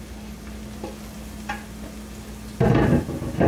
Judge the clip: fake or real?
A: real